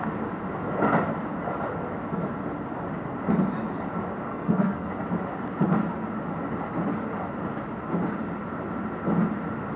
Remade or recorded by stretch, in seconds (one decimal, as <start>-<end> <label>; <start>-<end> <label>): 0.0-4.3 recorded; 4.3-4.9 remade; 4.9-9.8 recorded